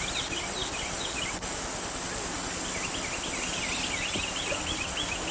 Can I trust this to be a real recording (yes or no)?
yes